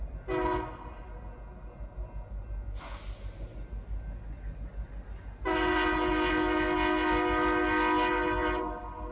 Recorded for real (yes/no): yes